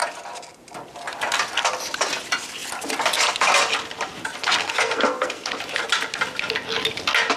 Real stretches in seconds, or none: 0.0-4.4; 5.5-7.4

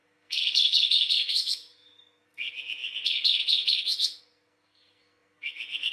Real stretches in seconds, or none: none

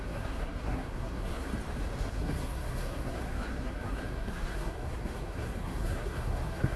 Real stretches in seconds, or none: 1.5-2.1

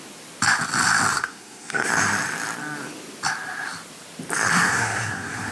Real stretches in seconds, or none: 0.0-1.1; 1.9-4.5

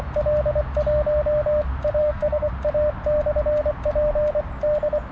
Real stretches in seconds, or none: 0.0-2.0; 2.5-5.1

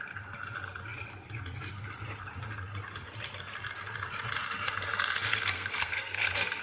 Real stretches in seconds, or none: 0.0-5.3

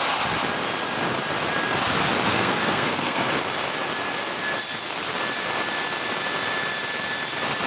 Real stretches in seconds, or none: 0.0-2.3; 3.3-7.7